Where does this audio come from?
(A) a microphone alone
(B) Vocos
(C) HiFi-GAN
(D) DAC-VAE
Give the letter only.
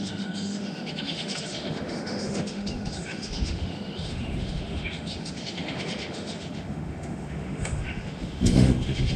D